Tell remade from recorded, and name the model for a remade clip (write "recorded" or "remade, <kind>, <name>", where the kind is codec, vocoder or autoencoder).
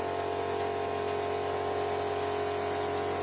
recorded